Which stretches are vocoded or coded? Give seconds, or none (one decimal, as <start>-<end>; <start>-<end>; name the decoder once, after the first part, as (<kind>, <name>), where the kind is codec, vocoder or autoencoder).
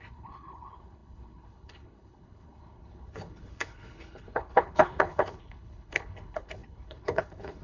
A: 0.0-7.6 (codec, HILCodec)